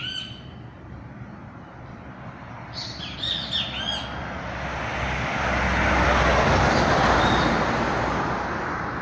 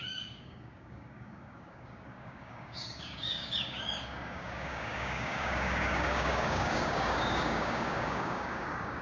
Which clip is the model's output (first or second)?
second